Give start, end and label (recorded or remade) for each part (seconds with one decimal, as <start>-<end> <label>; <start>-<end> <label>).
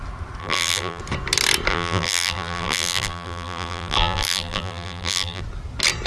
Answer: 0.0-0.4 recorded; 0.4-1.0 remade; 1.0-1.7 recorded; 1.7-5.4 remade; 5.4-6.1 recorded